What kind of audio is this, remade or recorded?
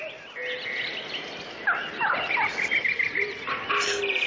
recorded